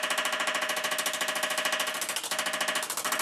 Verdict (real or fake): real